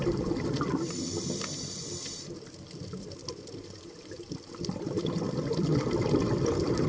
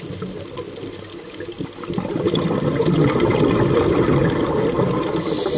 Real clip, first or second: second